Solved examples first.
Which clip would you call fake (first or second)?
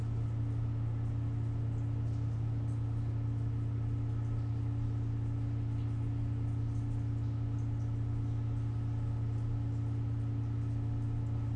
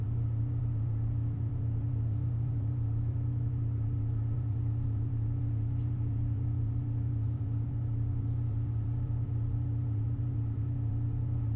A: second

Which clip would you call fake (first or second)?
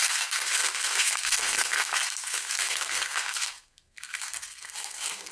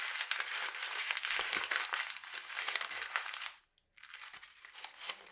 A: first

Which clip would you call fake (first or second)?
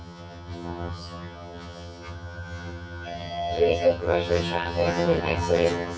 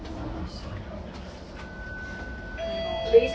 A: first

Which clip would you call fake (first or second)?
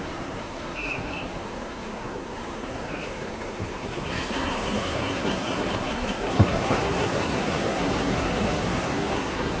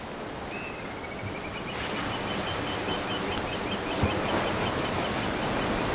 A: first